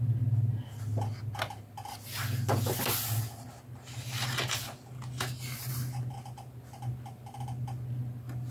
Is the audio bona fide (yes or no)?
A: yes